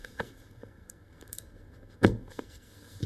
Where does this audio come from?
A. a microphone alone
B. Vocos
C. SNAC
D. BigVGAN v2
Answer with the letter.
C